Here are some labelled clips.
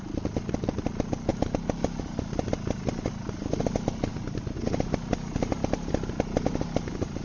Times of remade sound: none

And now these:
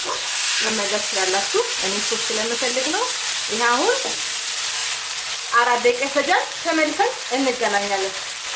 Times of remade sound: 0.0-0.7

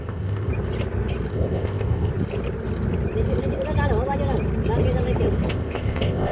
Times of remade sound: 0.0-0.5; 1.3-2.1; 5.5-6.3

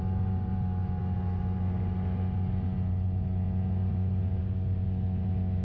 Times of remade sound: none